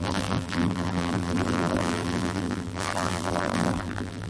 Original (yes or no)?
no